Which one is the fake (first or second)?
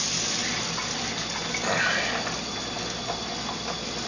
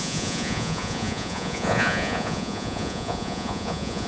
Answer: second